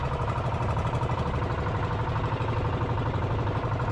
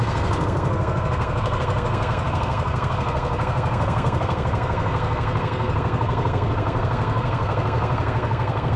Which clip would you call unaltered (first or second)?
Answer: first